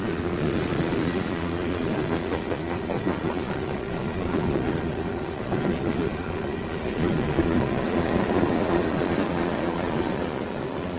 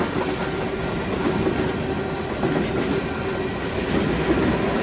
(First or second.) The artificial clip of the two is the first